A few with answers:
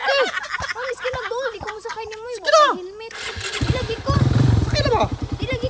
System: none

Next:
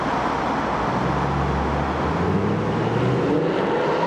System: none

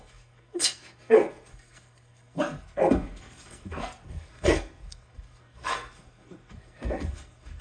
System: codec, SNAC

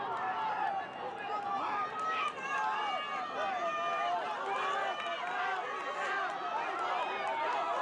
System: none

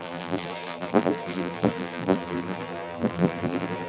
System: vocoder, BigVGAN v2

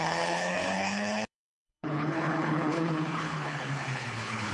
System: codec, HILCodec